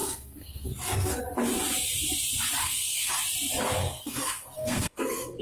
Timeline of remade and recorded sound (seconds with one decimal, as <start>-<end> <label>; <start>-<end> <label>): 0.0-1.2 remade; 1.2-2.6 recorded; 2.6-3.1 remade; 3.1-3.8 recorded; 3.8-5.4 remade

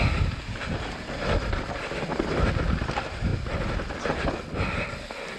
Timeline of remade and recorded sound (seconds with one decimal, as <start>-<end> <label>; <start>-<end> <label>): 0.0-5.4 recorded

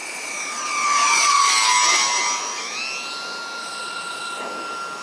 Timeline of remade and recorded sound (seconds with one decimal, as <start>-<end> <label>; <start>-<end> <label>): 0.0-1.5 remade; 1.5-3.6 recorded; 3.6-4.4 remade; 4.4-5.0 recorded

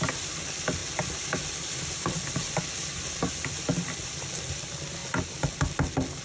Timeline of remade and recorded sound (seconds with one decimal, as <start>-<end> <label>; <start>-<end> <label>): 0.0-6.2 recorded

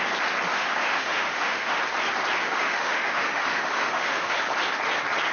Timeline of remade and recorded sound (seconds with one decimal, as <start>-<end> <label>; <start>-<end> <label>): 0.0-0.5 recorded; 0.5-1.8 remade; 1.8-2.4 recorded; 2.4-4.4 remade; 4.4-5.3 recorded

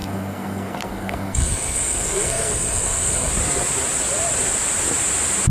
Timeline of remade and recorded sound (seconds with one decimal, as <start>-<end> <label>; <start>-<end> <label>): 0.0-3.3 remade; 3.3-5.5 recorded

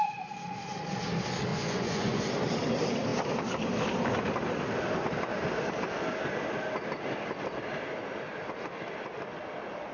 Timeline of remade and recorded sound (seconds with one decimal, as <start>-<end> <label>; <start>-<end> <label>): 0.0-1.5 recorded; 1.5-2.3 remade; 2.3-9.9 recorded

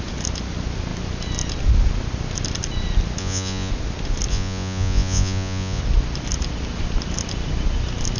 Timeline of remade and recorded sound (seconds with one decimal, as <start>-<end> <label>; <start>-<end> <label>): 0.0-3.2 recorded; 3.2-3.7 remade; 3.7-4.3 recorded; 4.3-5.8 remade; 5.8-8.2 recorded